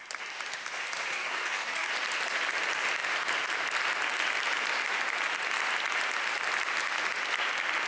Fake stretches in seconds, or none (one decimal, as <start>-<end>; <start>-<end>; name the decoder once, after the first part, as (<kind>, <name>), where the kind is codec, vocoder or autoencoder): 1.1-1.9 (codec, DAC)